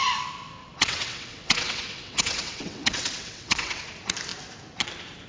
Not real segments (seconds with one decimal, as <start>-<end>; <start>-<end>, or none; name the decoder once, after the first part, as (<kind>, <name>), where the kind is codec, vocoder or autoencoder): 0.6-3.8 (vocoder, WaveNeXt)